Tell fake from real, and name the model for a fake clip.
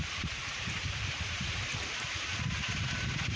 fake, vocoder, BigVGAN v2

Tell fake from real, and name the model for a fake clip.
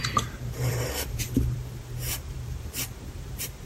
fake, vocoder, BigVGAN v2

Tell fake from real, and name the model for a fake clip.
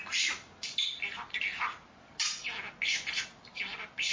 real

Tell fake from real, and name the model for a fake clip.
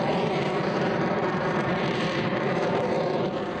fake, vocoder, BigVGAN v2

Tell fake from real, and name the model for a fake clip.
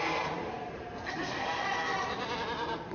fake, vocoder, BigVGAN v2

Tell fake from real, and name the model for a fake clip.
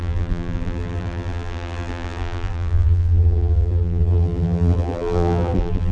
fake, vocoder, BigVGAN v2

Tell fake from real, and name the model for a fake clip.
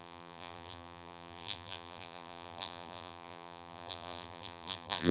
fake, vocoder, BigVGAN v2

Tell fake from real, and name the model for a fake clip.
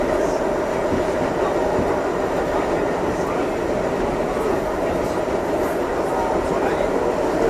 real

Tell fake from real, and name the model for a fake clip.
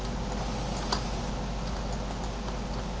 real